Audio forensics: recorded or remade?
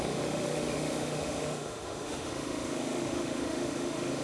remade